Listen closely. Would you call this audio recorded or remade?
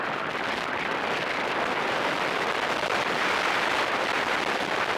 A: recorded